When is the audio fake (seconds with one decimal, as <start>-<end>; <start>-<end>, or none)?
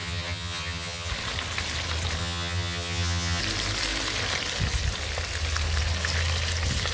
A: 0.0-1.1; 2.2-3.4